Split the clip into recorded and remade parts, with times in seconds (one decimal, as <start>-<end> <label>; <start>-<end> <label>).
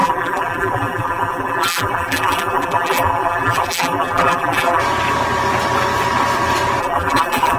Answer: 0.0-4.8 remade; 4.8-6.8 recorded; 6.8-7.6 remade